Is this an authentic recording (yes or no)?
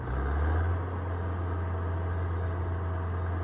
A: yes